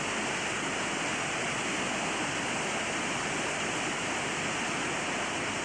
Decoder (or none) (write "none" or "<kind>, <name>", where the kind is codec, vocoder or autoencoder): none